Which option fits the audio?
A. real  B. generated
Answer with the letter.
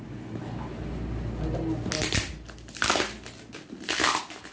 A